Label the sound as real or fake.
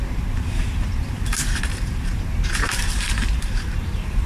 fake